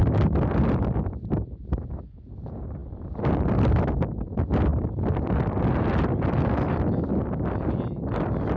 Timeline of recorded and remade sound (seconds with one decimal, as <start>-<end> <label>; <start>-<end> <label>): 0.0-2.1 remade; 2.1-2.8 recorded; 2.8-4.0 remade; 4.0-4.7 recorded; 4.7-5.8 remade; 5.8-8.6 recorded